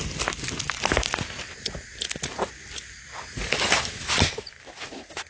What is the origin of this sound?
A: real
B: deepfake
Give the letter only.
A